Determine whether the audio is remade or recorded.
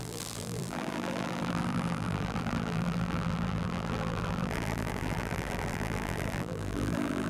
remade